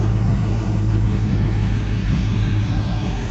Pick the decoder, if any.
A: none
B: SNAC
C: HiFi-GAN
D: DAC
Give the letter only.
B